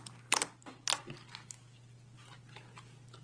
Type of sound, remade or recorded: recorded